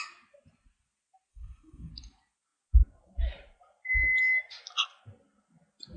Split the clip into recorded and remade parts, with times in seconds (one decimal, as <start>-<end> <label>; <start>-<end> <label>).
0.0-1.3 recorded; 1.3-1.9 remade; 1.9-6.0 recorded